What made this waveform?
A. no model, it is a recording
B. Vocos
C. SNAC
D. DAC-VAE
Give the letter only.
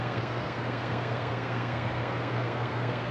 C